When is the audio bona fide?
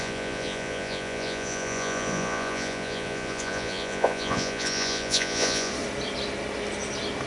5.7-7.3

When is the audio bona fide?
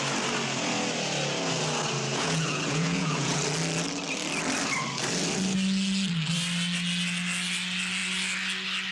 0.0-2.1; 3.4-8.9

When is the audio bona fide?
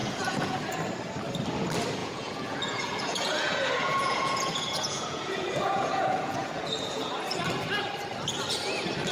0.6-2.0; 7.1-9.1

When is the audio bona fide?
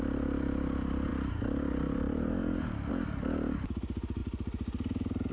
0.0-5.3